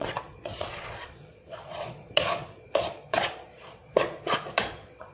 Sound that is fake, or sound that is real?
fake